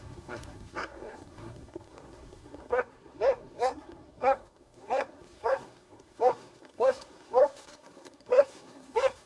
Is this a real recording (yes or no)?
no